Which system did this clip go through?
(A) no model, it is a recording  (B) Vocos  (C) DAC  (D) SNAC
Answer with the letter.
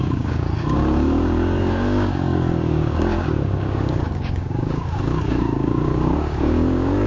C